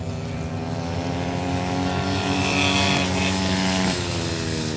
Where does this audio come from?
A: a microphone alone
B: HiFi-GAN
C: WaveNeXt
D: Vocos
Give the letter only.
A